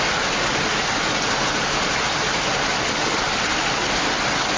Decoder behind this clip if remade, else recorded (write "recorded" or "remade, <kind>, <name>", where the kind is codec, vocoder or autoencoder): recorded